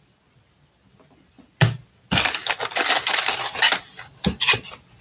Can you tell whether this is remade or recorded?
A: recorded